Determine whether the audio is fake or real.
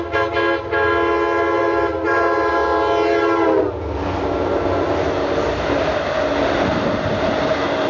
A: real